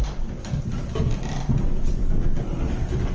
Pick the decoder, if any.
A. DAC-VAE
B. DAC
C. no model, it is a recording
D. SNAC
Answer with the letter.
C